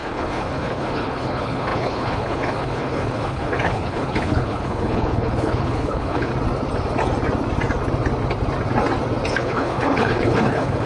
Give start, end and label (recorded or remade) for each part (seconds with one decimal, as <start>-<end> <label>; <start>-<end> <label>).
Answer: 0.0-6.3 remade; 6.3-9.3 recorded; 9.3-10.9 remade